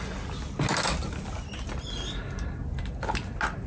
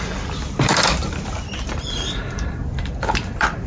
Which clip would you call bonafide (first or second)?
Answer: first